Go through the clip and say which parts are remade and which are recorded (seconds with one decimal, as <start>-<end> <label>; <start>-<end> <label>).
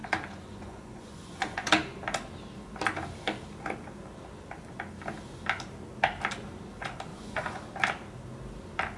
0.0-1.7 remade; 1.7-7.1 recorded; 7.1-7.6 remade; 7.6-9.0 recorded